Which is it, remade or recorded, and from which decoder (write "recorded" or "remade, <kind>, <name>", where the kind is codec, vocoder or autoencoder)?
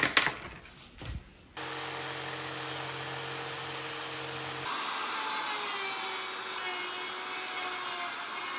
recorded